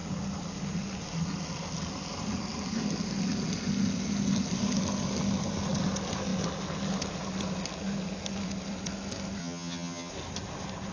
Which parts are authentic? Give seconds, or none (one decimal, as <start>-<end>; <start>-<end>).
0.0-9.4; 10.1-10.9